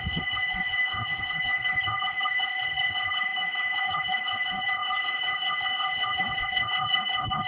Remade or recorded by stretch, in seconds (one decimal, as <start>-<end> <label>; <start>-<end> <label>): 0.0-7.5 remade